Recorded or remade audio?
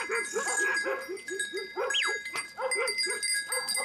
recorded